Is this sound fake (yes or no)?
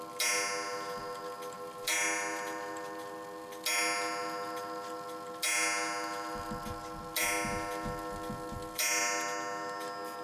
no